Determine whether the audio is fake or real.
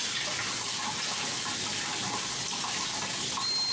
real